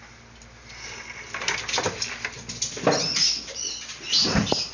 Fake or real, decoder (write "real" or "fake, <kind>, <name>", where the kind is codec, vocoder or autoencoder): real